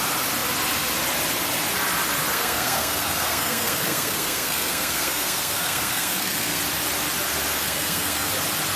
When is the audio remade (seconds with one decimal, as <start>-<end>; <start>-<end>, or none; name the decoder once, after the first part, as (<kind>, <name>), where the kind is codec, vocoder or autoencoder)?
2.3-6.6 (codec, SNAC); 7.5-8.3